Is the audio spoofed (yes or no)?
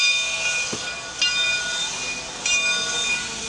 no